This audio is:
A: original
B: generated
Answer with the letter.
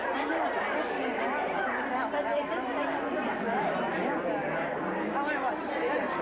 A